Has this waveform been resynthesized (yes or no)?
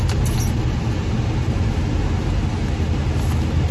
no